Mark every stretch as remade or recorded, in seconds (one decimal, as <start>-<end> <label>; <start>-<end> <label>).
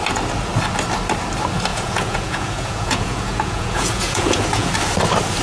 0.0-1.7 recorded; 1.7-4.7 remade; 4.7-5.4 recorded